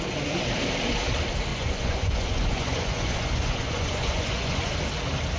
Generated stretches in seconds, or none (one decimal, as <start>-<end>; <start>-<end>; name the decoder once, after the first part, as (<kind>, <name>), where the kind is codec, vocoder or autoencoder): 1.5-4.7 (vocoder, Vocos)